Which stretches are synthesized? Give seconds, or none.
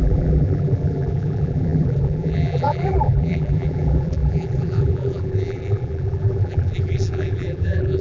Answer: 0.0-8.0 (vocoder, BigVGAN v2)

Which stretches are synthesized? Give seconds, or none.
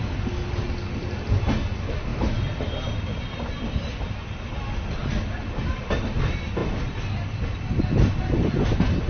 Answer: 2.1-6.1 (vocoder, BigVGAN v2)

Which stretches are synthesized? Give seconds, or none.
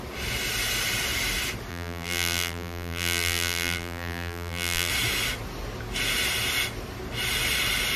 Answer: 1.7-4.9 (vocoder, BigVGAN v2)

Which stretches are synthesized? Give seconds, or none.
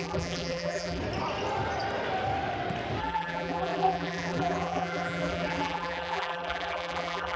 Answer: 0.0-1.0 (vocoder, BigVGAN v2); 3.0-7.4